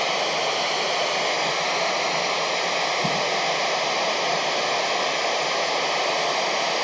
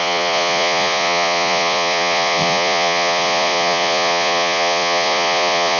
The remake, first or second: second